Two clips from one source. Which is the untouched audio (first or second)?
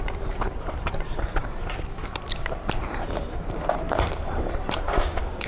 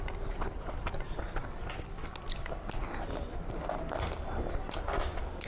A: second